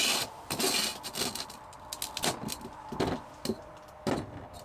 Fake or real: real